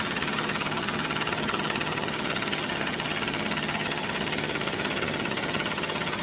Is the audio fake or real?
fake